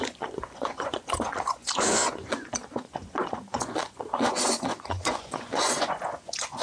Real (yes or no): no